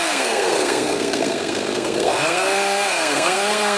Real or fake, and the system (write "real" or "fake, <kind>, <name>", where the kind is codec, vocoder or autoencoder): fake, codec, SNAC